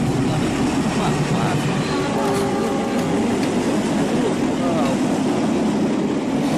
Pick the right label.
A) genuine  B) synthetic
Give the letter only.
A